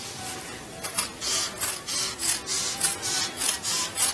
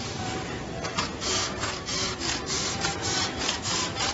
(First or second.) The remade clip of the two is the second